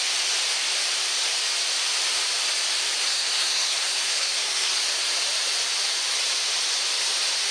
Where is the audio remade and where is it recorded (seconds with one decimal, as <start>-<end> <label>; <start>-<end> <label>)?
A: 0.0-3.0 recorded; 3.0-4.7 remade; 4.7-7.5 recorded